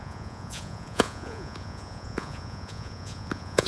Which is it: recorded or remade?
remade